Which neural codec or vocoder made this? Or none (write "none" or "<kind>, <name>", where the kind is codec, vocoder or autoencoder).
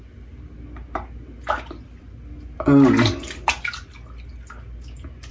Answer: none